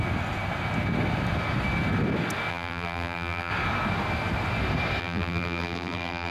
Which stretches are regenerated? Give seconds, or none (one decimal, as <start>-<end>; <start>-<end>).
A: 2.5-3.5; 5.0-6.3